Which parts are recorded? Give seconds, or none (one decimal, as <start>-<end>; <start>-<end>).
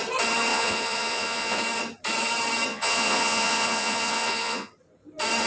0.0-0.5; 1.6-2.7; 4.7-5.5